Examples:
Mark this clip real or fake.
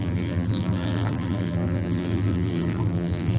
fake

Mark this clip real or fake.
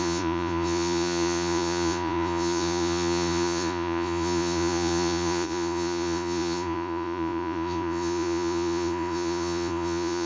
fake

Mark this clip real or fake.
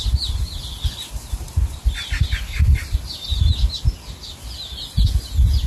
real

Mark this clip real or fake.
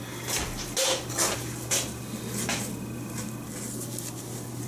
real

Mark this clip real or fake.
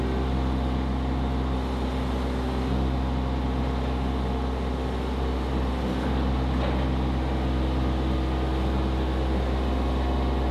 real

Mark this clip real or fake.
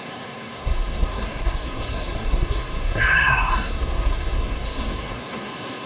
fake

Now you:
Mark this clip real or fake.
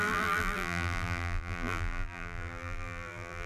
fake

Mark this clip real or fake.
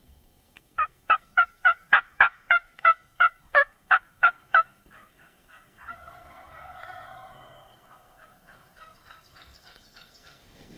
fake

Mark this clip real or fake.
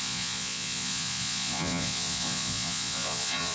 fake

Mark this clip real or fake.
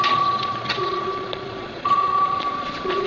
fake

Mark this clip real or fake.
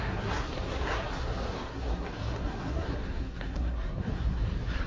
fake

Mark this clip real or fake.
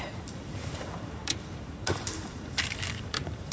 fake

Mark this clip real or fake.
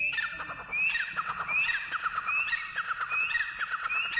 real